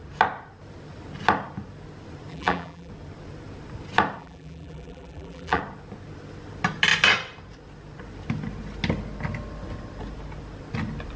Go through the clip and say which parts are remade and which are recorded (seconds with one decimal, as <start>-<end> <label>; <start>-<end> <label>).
0.0-2.3 recorded; 2.3-2.9 remade; 2.9-4.2 recorded; 4.2-5.6 remade; 5.6-11.2 recorded